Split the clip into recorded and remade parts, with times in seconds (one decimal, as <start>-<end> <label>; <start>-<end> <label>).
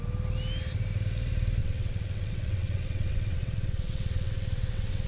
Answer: 0.0-1.6 recorded; 1.6-5.1 remade